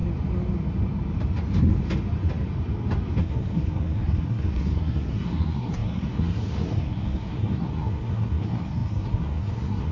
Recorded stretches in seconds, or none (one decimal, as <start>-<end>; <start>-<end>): 0.0-3.2